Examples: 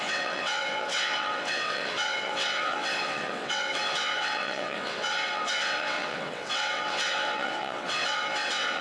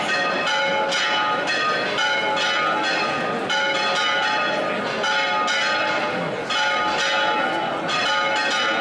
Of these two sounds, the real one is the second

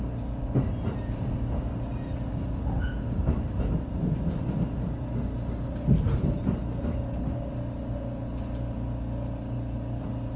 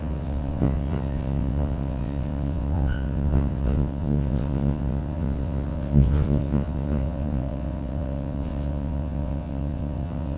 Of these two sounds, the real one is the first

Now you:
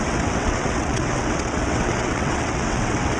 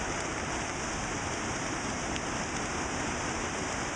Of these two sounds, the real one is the second